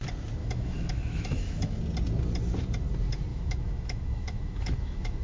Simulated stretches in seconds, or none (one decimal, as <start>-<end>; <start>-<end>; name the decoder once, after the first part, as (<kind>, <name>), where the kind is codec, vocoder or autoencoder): 0.4-1.8 (autoencoder, DAC-VAE); 3.3-5.2